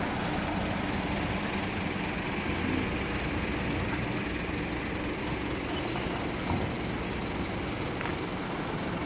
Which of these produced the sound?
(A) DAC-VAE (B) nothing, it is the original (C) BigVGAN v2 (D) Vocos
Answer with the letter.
B